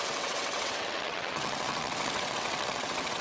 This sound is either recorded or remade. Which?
remade